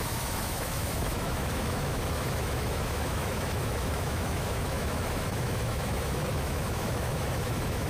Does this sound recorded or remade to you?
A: remade